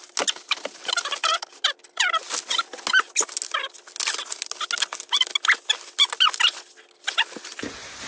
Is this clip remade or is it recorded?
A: recorded